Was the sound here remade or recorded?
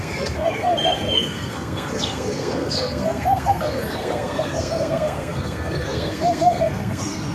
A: remade